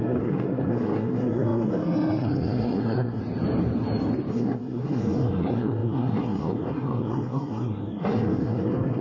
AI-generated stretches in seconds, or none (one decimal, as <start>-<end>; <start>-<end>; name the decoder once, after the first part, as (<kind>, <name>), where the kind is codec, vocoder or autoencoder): 0.0-3.2 (codec, SNAC); 4.3-9.0